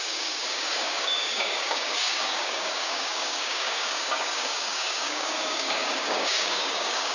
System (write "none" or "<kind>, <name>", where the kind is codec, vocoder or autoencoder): codec, DAC